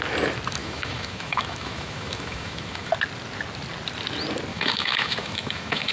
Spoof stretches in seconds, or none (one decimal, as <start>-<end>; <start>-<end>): 0.6-2.9; 4.5-5.9